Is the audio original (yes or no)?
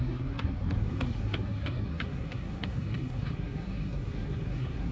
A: no